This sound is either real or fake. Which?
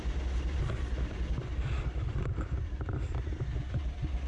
real